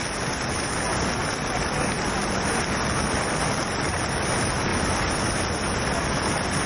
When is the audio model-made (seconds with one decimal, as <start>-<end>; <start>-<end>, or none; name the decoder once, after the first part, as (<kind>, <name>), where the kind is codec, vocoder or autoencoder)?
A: none